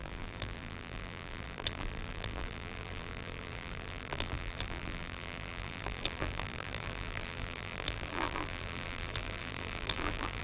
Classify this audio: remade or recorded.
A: remade